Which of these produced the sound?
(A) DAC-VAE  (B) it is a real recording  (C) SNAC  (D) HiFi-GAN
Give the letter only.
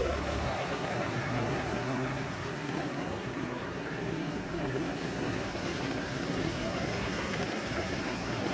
C